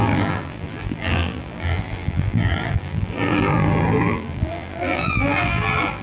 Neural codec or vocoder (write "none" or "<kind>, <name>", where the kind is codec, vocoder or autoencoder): vocoder, BigVGAN v2